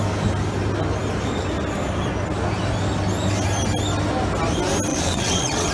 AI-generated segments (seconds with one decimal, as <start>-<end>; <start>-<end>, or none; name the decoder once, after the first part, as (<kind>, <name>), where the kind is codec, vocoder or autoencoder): 4.9-5.7 (vocoder, WaveNeXt)